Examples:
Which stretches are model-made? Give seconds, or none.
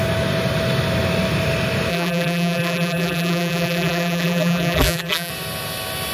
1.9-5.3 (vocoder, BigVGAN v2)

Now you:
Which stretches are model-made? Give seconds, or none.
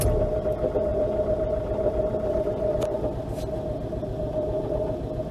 none